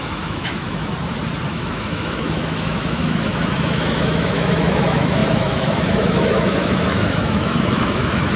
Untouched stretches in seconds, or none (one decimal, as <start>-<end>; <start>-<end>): 0.9-1.5